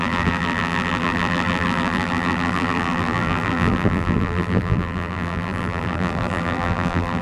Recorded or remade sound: remade